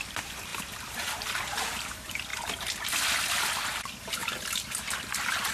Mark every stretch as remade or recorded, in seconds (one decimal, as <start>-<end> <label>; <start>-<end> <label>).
0.0-5.5 recorded

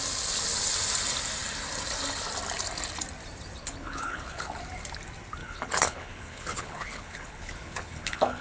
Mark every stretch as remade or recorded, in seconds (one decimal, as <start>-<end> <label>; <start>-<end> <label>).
0.0-3.6 recorded; 3.6-4.6 remade; 4.6-5.4 recorded; 5.4-8.4 remade

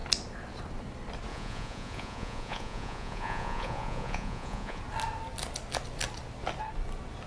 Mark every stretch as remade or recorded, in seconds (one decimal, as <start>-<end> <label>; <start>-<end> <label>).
0.0-1.3 recorded; 1.3-4.8 remade; 4.8-7.3 recorded

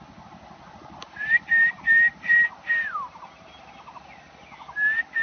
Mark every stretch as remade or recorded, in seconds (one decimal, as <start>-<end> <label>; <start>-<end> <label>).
0.0-5.2 recorded

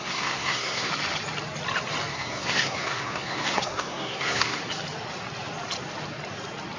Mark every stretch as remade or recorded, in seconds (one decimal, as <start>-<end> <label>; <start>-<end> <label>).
0.0-0.9 remade; 0.9-2.1 recorded; 2.1-4.6 remade; 4.6-6.8 recorded

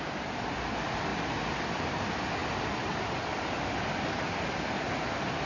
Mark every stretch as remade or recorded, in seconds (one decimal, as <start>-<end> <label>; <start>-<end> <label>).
0.0-5.5 recorded